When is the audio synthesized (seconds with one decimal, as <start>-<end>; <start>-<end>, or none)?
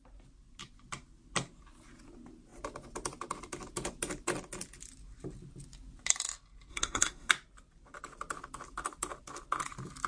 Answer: 6.7-7.3